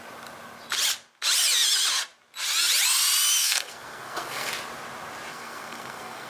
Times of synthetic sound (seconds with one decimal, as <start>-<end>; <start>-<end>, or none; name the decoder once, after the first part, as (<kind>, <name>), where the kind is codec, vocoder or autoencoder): 3.4-4.5 (codec, SNAC); 5.3-6.3